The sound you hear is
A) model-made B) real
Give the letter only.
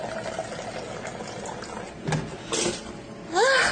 B